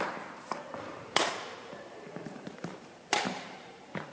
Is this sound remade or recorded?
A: remade